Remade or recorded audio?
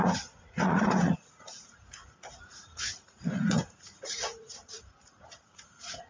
remade